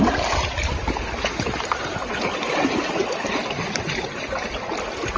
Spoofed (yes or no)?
no